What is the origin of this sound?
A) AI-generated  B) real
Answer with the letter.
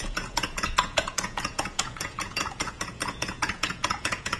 A